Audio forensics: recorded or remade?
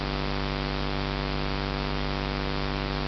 recorded